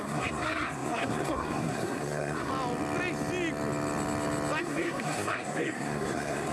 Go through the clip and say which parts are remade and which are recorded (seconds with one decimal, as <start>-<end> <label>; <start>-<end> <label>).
0.0-2.5 remade; 2.5-4.6 recorded; 4.6-6.5 remade